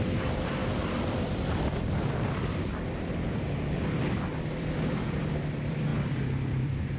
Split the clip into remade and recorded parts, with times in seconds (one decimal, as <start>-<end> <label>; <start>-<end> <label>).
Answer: 0.0-7.0 remade